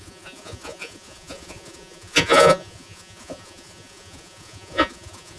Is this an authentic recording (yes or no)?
no